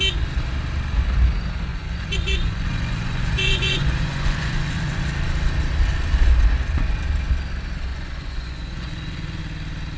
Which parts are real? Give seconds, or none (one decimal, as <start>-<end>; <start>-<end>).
0.0-1.7; 5.0-7.9; 9.4-10.0